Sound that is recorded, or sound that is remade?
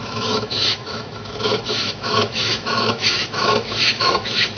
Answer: remade